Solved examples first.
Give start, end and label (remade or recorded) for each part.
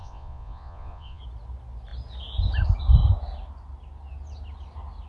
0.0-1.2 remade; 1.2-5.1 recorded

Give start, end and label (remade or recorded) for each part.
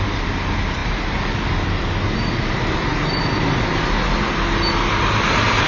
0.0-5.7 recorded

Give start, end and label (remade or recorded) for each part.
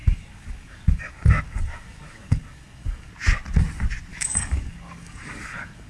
0.0-3.1 remade; 3.1-4.1 recorded; 4.1-5.9 remade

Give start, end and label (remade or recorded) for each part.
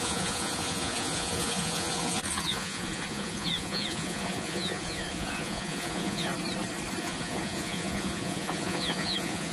0.0-6.3 remade; 6.3-7.0 recorded; 7.0-9.5 remade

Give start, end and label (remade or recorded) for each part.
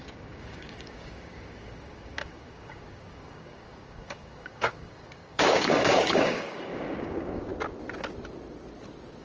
0.0-7.5 remade; 7.5-9.2 recorded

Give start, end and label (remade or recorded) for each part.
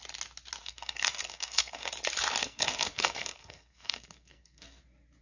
0.0-0.6 recorded; 0.6-1.9 remade; 1.9-2.4 recorded; 2.4-4.8 remade; 4.8-5.2 recorded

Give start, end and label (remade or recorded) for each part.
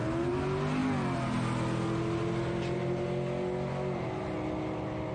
0.0-5.1 recorded